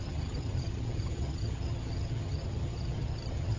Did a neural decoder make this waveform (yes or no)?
yes